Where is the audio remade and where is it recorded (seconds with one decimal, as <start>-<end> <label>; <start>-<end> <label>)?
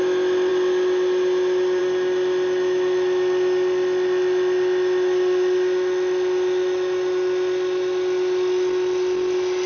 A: 0.0-9.7 recorded